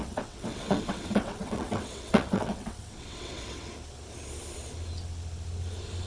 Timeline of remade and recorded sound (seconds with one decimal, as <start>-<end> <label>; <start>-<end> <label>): 0.0-3.7 remade; 3.7-6.1 recorded